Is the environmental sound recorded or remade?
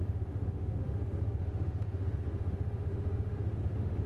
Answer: remade